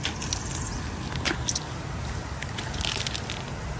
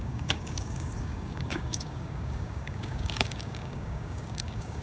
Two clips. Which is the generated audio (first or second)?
second